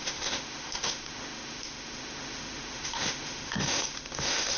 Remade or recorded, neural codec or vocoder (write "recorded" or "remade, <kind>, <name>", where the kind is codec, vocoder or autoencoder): remade, autoencoder, DAC-VAE